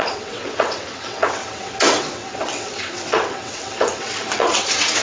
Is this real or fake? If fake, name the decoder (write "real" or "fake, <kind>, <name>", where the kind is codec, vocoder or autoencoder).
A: fake, vocoder, WaveNeXt